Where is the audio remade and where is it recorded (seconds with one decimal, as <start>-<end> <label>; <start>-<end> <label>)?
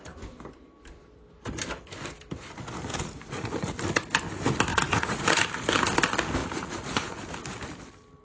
0.0-2.9 recorded; 2.9-3.7 remade; 3.7-4.7 recorded; 4.7-5.5 remade; 5.5-6.4 recorded; 6.4-7.2 remade; 7.2-8.2 recorded